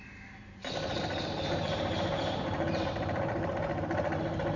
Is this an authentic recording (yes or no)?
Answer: no